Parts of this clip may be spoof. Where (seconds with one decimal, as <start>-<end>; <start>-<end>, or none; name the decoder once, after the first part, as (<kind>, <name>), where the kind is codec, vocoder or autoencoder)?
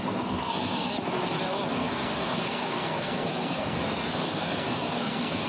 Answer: 0.0-0.9 (codec, SNAC); 1.7-5.5